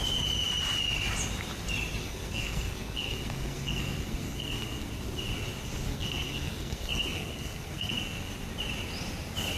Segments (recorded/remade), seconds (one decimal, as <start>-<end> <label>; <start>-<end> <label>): 0.0-2.0 recorded; 2.0-4.9 remade; 4.9-5.9 recorded; 5.9-8.3 remade; 8.3-9.6 recorded